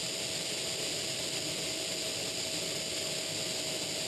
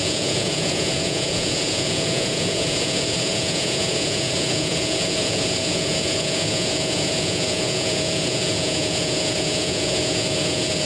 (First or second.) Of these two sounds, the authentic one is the first